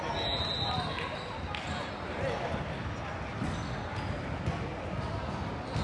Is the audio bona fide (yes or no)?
yes